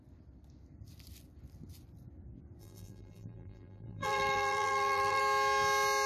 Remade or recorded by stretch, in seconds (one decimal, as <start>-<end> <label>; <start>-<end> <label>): 0.0-2.6 recorded; 2.6-5.2 remade; 5.2-6.1 recorded